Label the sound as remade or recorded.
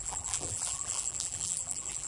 remade